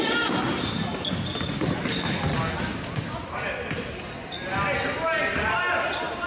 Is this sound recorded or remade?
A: recorded